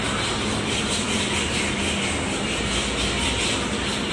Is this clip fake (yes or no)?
no